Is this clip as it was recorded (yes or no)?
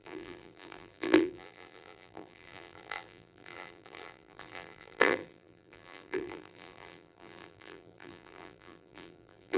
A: no